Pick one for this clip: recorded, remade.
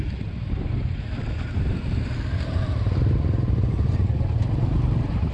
remade